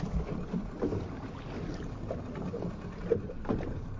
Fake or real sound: real